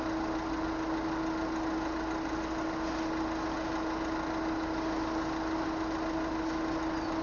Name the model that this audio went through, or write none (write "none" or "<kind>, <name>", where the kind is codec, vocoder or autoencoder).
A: none